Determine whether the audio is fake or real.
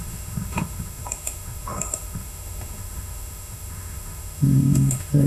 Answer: fake